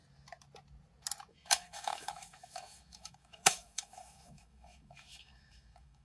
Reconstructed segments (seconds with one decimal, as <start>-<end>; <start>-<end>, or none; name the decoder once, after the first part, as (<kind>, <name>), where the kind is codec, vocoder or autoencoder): 1.3-6.0 (autoencoder, DAC-VAE)